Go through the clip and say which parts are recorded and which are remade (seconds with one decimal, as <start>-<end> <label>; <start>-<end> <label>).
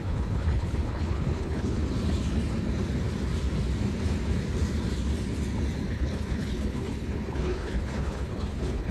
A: 0.0-1.8 remade; 1.8-5.9 recorded; 5.9-8.9 remade